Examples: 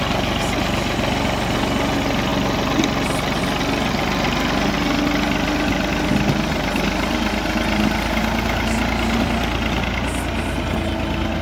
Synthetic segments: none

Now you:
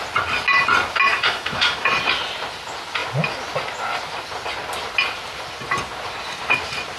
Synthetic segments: 1.1-1.9 (autoencoder, DAC-VAE)

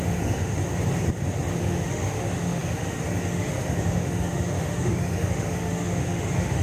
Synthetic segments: 0.0-0.6 (autoencoder, DAC-VAE); 1.5-6.6

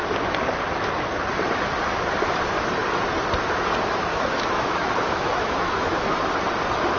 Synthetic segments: 4.1-6.2 (autoencoder, DAC-VAE)

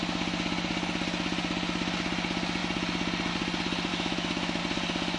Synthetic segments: 3.9-4.6 (autoencoder, DAC-VAE)

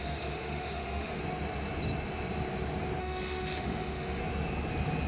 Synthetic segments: 0.0-1.2 (autoencoder, DAC-VAE); 3.0-4.2